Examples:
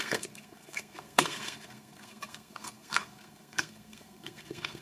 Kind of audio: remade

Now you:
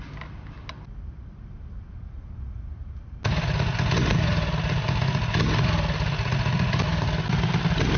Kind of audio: recorded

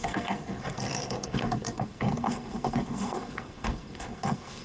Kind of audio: remade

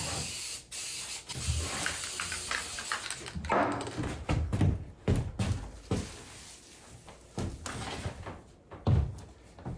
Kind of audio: recorded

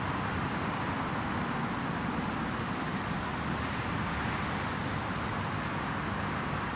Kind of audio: recorded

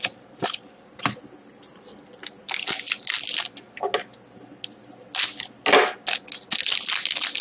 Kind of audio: recorded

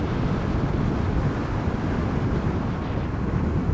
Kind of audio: recorded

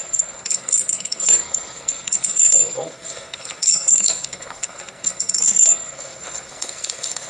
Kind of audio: remade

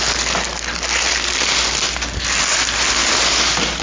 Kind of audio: recorded